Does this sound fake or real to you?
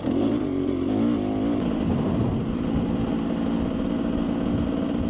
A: real